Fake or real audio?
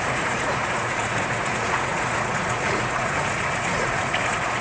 fake